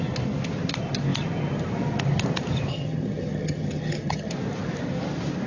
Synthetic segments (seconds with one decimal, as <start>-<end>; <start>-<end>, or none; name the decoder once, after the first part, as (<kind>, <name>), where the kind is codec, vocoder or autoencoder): 2.7-4.3 (vocoder, HiFi-GAN)